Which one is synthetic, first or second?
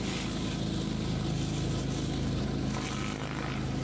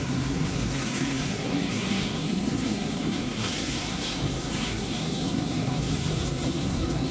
second